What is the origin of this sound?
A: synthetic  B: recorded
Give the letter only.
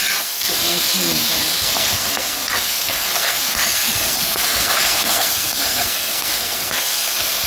A